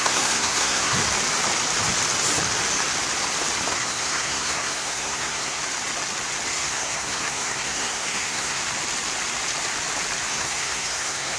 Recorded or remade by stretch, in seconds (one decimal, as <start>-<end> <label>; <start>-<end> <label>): 0.0-1.0 remade; 1.0-3.7 recorded; 3.7-5.6 remade; 5.6-6.5 recorded; 6.5-8.6 remade; 8.6-10.3 recorded; 10.3-11.4 remade